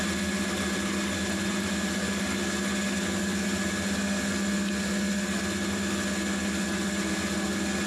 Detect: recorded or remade recorded